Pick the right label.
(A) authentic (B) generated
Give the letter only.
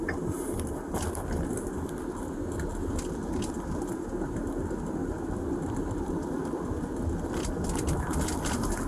A